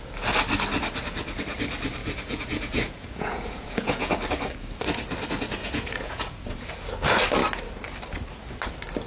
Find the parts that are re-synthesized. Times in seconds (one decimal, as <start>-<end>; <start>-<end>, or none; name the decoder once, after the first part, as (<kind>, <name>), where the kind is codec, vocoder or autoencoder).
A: 2.0-4.1 (vocoder, Vocos); 5.6-6.7